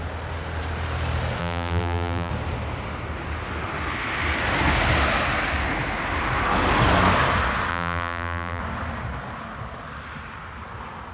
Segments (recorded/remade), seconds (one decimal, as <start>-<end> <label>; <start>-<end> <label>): 0.0-1.4 recorded; 1.4-2.3 remade; 2.3-7.7 recorded; 7.7-8.6 remade; 8.6-11.1 recorded